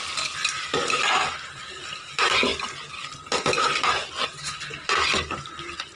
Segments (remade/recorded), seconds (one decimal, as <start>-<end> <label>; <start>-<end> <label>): 0.0-5.9 recorded